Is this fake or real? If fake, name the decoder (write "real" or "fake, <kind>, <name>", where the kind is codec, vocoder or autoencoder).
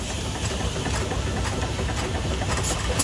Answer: real